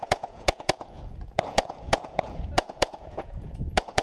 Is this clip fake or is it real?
fake